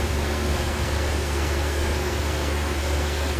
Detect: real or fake fake